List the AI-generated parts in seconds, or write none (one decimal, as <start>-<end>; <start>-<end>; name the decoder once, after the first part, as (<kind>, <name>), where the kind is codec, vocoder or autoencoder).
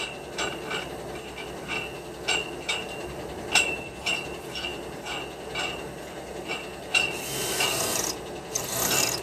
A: none